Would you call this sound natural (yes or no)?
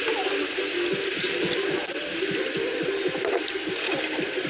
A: yes